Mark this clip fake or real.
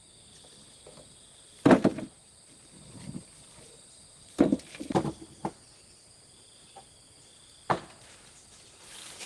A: real